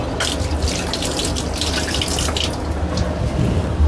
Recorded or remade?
recorded